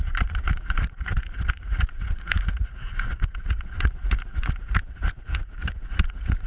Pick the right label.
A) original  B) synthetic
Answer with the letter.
B